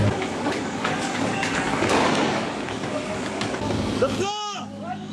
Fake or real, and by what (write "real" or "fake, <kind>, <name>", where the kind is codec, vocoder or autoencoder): fake, codec, DAC